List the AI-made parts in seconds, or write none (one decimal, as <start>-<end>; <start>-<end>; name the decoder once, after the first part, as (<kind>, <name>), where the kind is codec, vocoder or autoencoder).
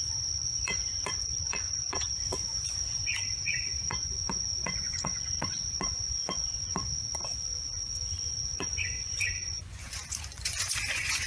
0.0-6.8 (vocoder, Vocos); 8.2-11.3